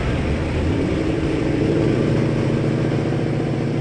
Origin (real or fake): fake